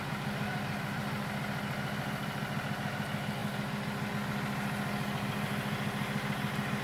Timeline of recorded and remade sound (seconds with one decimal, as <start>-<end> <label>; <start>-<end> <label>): 0.0-6.8 recorded